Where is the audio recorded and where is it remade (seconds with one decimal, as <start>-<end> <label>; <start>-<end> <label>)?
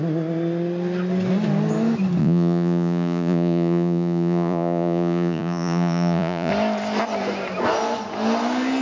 0.0-2.2 recorded; 2.2-6.5 remade; 6.5-8.8 recorded